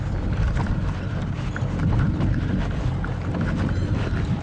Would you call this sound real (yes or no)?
yes